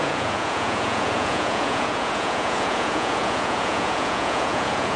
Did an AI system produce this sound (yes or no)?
yes